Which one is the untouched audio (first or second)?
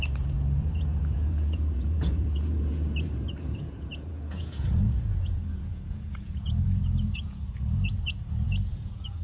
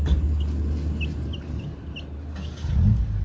second